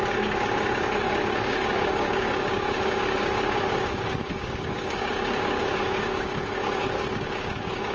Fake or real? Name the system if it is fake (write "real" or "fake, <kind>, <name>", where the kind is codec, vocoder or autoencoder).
fake, codec, DAC